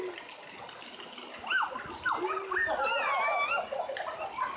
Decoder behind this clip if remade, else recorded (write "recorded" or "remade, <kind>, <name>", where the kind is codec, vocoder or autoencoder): recorded